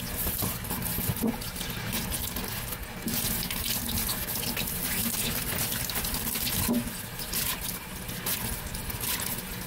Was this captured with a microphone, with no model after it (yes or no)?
yes